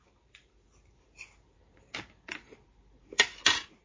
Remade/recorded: remade